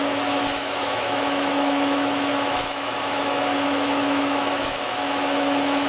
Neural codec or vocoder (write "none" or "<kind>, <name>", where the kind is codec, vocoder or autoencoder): autoencoder, DAC-VAE